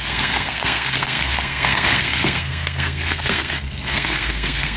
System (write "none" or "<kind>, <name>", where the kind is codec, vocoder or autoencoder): codec, SNAC